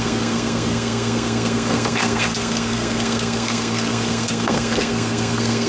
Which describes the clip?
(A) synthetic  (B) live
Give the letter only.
A